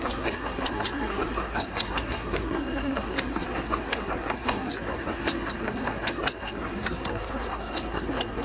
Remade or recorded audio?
remade